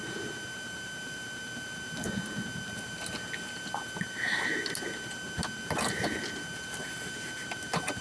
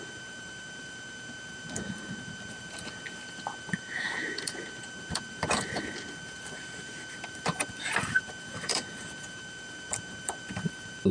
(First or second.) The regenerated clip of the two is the second